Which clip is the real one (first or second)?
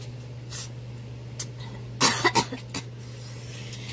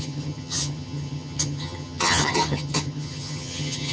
first